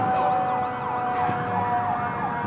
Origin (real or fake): real